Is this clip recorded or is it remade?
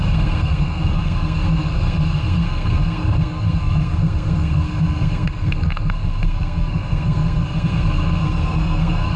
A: remade